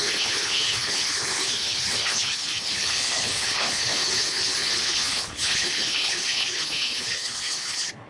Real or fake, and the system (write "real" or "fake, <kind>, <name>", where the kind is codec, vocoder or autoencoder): fake, codec, HILCodec